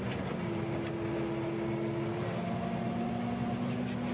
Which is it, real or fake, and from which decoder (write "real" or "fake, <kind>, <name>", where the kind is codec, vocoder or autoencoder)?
real